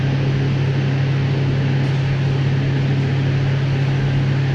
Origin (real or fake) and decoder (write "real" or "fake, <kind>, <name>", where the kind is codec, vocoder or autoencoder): real